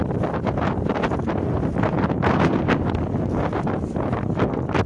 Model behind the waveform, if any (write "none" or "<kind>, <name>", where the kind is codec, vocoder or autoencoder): none